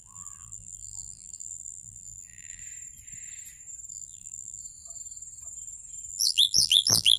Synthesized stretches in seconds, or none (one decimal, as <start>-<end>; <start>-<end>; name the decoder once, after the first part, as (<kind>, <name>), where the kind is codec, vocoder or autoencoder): 0.0-2.6 (vocoder, BigVGAN v2); 3.9-4.6; 6.1-7.2